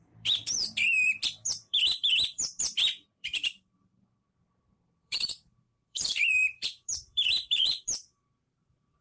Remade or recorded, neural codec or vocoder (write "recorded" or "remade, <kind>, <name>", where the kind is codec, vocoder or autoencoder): remade, vocoder, BigVGAN v2